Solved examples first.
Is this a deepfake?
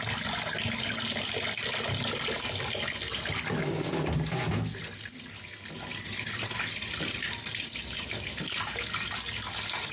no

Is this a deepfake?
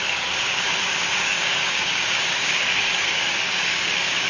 yes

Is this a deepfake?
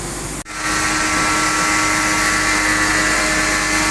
no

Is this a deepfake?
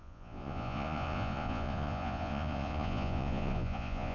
yes